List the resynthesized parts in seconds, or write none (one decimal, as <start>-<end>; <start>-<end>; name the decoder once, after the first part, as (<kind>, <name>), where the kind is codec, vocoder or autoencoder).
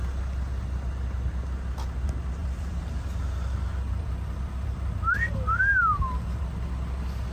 2.4-5.3 (vocoder, BigVGAN v2)